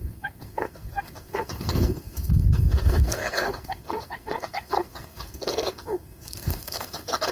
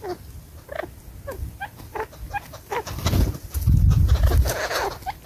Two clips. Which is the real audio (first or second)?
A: second